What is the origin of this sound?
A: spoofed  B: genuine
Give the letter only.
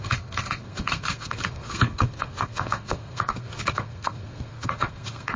A